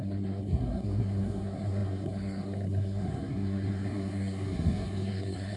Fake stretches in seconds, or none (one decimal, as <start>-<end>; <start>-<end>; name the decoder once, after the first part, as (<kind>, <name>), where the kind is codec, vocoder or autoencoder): 0.0-5.6 (codec, SNAC)

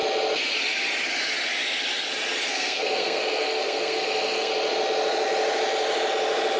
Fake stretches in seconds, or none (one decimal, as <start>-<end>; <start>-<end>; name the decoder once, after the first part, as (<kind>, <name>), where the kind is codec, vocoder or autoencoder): 2.5-4.5 (codec, SNAC)

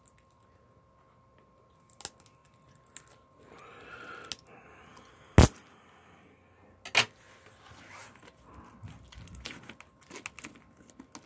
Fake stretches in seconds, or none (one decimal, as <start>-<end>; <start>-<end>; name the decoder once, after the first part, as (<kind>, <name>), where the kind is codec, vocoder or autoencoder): none

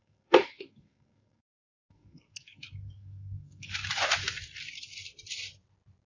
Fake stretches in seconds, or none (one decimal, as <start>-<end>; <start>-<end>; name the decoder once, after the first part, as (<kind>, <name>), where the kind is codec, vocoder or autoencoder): 0.0-3.7 (codec, SNAC)

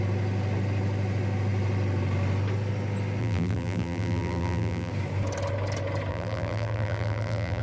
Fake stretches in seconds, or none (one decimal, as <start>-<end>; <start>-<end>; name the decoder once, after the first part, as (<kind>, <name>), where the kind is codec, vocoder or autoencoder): 3.2-4.9 (vocoder, BigVGAN v2); 6.1-7.6

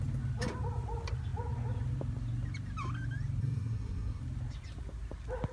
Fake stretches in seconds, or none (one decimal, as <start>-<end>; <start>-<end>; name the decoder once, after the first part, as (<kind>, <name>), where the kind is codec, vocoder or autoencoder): 3.4-4.2 (codec, SNAC)

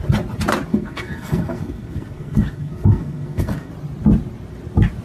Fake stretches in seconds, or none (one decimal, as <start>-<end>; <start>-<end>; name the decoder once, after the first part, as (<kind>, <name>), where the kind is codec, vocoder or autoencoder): 0.7-3.7 (codec, SNAC)

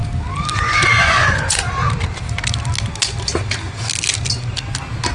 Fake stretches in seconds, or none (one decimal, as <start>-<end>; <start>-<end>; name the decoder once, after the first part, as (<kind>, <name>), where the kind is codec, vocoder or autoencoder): 0.5-1.6 (vocoder, Vocos)